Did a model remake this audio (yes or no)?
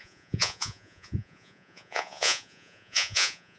yes